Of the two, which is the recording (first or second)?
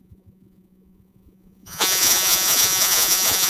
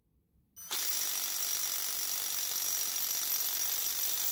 second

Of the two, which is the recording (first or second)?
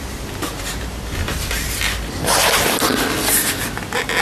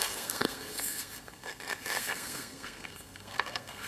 first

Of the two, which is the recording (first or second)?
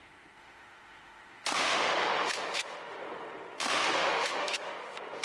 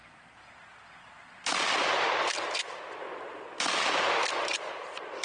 second